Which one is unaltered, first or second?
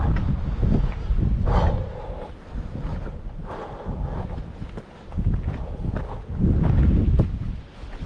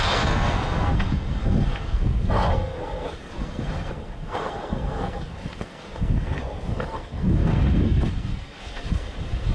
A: first